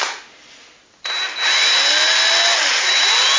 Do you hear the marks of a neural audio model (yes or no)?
no